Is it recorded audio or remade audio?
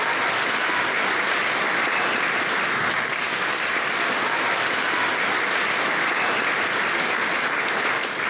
recorded